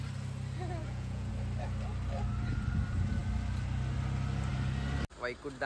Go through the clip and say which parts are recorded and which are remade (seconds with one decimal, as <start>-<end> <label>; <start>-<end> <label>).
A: 0.0-0.8 recorded; 0.8-1.3 remade; 1.3-5.7 recorded